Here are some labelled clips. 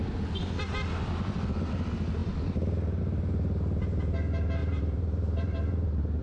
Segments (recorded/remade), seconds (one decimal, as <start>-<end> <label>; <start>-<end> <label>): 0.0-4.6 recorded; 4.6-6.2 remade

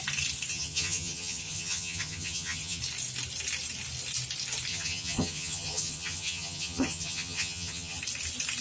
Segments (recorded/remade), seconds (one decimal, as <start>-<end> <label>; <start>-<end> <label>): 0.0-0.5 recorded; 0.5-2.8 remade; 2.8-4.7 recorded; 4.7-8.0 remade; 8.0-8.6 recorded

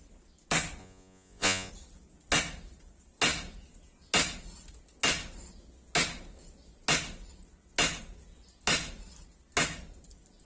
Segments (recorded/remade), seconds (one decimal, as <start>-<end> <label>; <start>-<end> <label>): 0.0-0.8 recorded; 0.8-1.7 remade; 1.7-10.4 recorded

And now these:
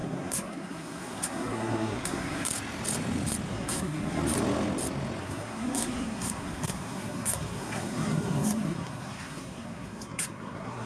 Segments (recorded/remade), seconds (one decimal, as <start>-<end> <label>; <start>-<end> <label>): 0.0-2.5 remade; 2.5-3.5 recorded; 3.5-4.2 remade; 4.2-5.2 recorded; 5.2-10.9 remade

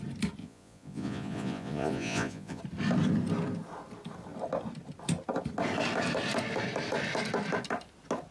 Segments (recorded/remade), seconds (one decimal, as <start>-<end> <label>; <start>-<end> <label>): 0.0-0.4 recorded; 0.4-2.6 remade; 2.6-8.3 recorded

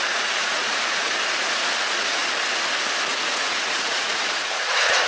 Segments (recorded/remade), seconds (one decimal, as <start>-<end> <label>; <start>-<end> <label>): 0.0-2.2 remade; 2.2-3.1 recorded; 3.1-5.1 remade